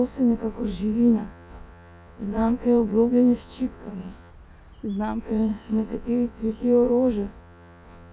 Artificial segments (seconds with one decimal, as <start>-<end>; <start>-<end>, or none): 0.0-4.3; 5.2-8.1